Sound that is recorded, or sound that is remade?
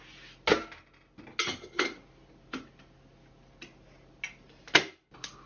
recorded